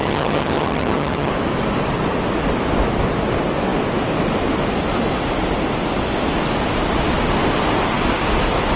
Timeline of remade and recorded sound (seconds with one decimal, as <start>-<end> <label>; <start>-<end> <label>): 0.0-1.3 remade; 1.3-8.8 recorded